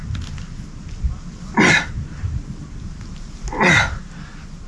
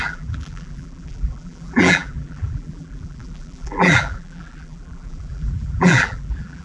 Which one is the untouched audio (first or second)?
first